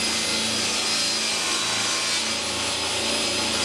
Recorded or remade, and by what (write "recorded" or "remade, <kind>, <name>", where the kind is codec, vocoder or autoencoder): recorded